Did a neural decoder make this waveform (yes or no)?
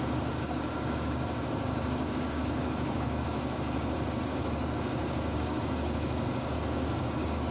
yes